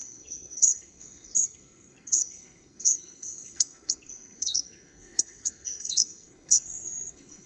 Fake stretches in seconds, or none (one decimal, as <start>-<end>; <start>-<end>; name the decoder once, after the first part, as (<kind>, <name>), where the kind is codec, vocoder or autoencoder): 0.0-7.5 (codec, SNAC)